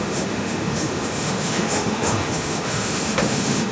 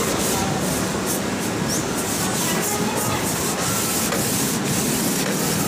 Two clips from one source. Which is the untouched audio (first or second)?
second